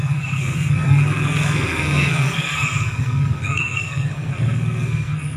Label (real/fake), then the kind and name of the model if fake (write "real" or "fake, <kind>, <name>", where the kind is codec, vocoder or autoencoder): fake, codec, SNAC